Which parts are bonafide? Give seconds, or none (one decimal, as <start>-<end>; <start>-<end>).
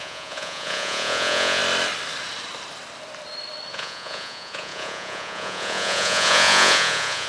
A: 1.6-3.7